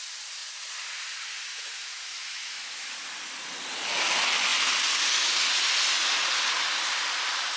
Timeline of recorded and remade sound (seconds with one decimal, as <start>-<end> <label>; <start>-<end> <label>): 0.0-1.5 recorded; 1.5-2.9 remade; 2.9-7.6 recorded